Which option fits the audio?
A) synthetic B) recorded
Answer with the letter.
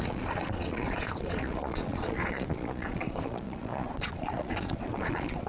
A